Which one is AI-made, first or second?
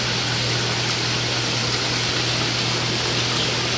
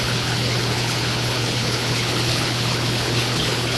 second